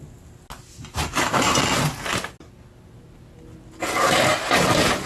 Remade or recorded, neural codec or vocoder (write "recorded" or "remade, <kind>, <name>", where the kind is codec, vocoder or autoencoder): recorded